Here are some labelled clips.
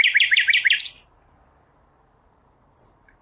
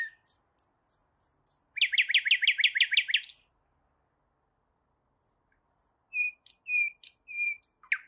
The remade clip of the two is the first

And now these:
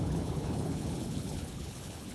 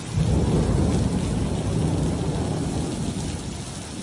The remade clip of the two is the first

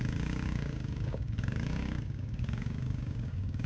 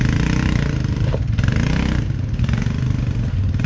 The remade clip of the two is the first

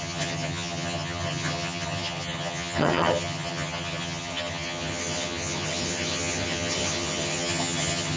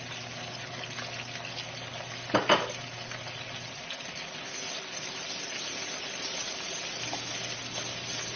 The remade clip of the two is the first